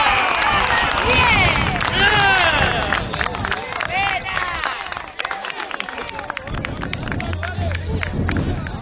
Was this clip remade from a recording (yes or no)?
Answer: no